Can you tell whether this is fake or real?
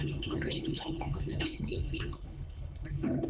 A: fake